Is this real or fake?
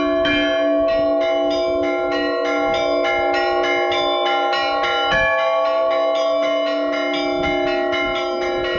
real